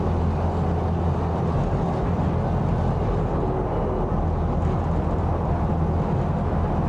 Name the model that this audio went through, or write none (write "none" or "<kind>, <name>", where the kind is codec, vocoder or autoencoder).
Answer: none